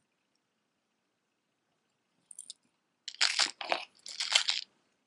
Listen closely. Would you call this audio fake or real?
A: real